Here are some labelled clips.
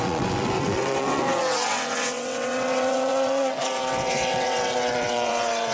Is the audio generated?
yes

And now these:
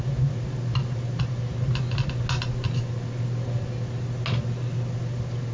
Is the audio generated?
no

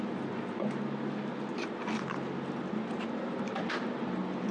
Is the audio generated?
no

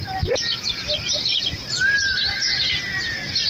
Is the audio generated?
no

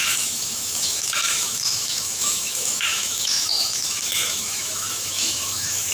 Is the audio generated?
yes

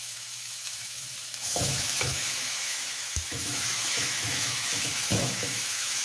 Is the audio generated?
yes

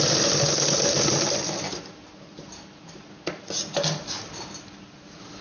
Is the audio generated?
no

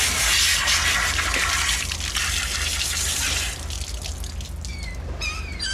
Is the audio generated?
no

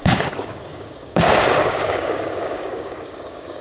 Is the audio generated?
yes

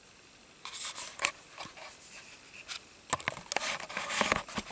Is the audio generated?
no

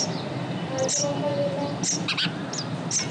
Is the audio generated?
no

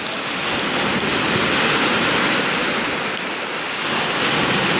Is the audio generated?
no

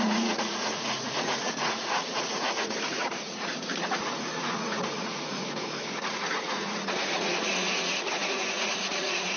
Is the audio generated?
yes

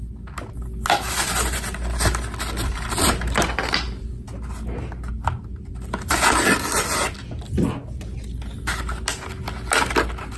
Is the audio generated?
no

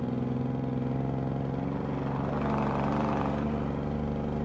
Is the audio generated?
no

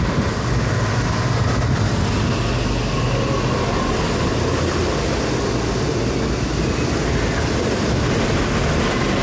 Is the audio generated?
no